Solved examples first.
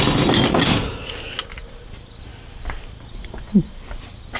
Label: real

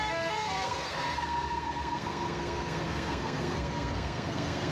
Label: fake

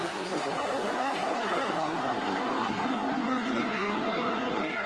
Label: fake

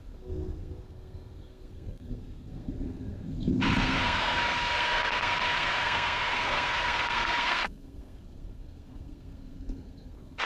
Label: fake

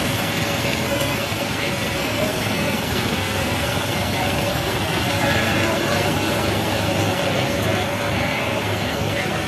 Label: fake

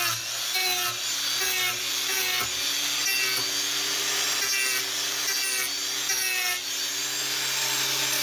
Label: real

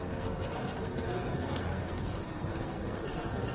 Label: fake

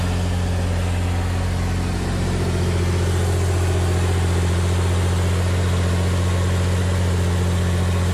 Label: real